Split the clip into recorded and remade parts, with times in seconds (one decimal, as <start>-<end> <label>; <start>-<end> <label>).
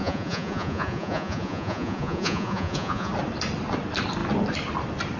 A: 0.0-3.1 remade; 3.1-5.2 recorded